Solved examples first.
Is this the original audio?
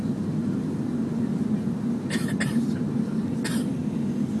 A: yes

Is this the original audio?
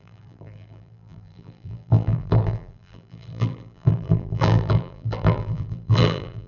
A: no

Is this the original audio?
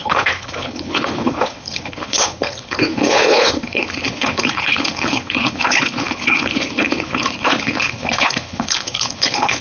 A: no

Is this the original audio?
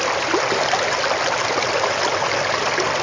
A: yes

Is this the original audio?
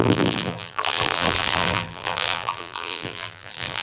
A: no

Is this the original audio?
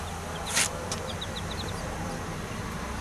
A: yes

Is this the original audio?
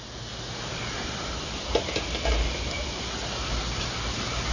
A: yes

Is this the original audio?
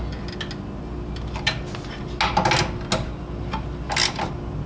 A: yes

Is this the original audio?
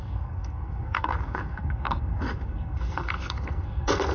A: no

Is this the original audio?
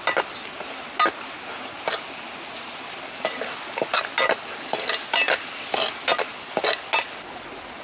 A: yes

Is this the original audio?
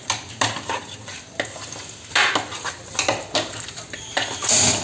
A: yes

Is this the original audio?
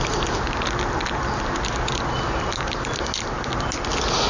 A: yes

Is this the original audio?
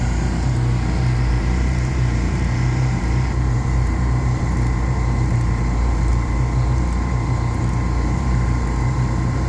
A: no